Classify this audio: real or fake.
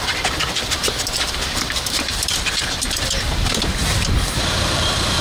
fake